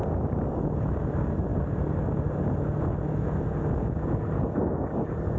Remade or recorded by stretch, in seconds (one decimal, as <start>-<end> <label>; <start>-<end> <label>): 0.0-5.4 recorded